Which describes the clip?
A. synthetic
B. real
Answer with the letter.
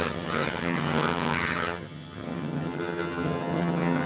A